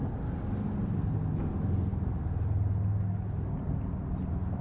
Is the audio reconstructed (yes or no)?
no